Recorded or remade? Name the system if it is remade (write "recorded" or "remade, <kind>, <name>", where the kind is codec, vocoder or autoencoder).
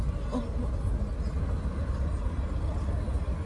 recorded